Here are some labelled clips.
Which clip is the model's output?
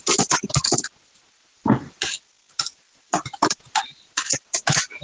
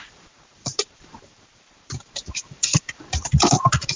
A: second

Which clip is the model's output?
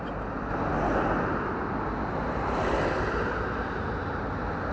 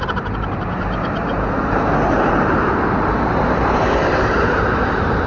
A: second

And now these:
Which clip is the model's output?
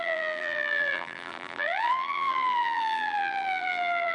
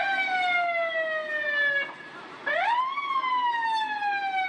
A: first